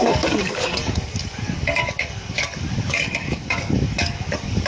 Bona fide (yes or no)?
no